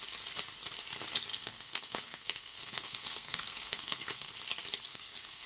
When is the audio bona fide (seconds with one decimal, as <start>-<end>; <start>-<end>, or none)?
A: 0.0-1.3; 4.3-4.9